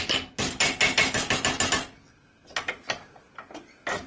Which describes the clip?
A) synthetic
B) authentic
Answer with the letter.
B